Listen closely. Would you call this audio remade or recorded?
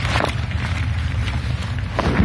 recorded